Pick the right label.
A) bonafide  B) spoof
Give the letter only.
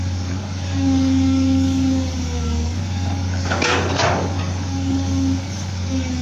B